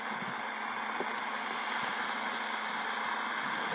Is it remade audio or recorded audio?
recorded